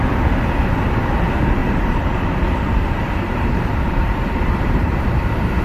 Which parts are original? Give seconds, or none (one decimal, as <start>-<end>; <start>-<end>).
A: 0.0-1.6; 5.0-5.6